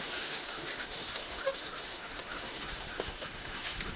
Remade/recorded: remade